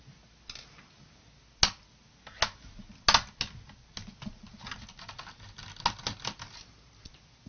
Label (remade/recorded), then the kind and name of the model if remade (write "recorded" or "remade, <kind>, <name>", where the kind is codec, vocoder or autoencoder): recorded